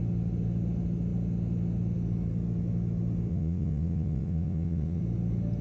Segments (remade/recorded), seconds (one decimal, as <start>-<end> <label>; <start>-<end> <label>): 0.0-3.3 recorded; 3.3-5.0 remade; 5.0-5.6 recorded